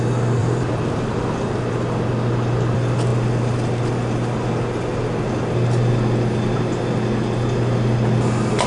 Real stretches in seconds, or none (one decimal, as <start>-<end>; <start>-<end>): 0.0-0.4; 1.6-8.7